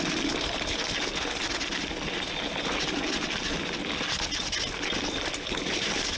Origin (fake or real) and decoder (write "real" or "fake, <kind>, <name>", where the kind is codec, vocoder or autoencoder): real